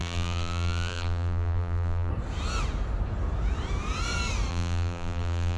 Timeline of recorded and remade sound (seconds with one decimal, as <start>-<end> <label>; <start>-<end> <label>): 0.0-2.1 remade; 2.1-4.5 recorded; 4.5-5.6 remade